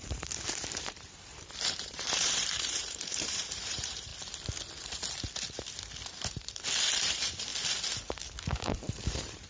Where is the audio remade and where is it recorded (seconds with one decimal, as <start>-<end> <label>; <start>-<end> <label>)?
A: 0.0-4.1 remade; 4.1-6.3 recorded; 6.3-7.5 remade; 7.5-8.4 recorded; 8.4-9.5 remade